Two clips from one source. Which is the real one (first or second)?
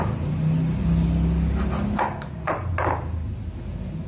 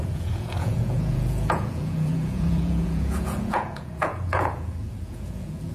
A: first